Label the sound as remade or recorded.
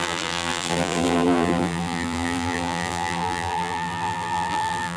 remade